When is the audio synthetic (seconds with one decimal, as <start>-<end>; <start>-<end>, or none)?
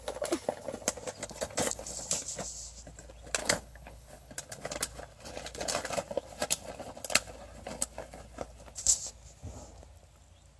1.2-2.0; 3.4-4.3